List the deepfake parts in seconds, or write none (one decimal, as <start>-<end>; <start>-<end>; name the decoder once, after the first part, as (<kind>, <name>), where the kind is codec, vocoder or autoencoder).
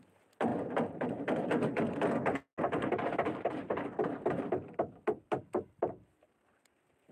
none